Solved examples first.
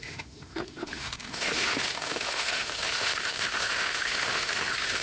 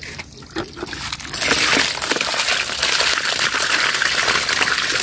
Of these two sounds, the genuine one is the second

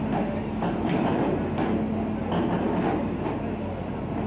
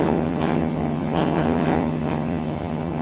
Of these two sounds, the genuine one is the first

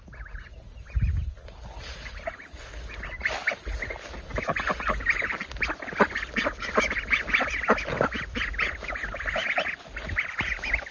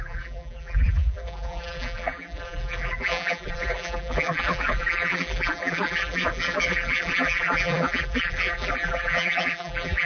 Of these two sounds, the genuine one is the first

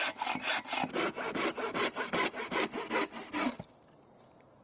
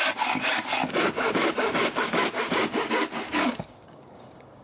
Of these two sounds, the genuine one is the first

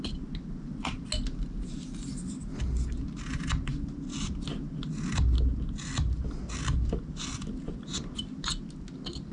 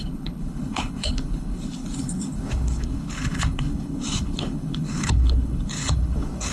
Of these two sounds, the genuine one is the first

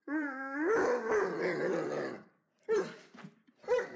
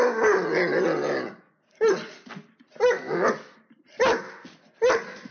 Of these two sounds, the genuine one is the second